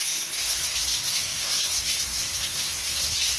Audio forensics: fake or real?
fake